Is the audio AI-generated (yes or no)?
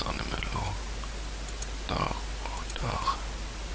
no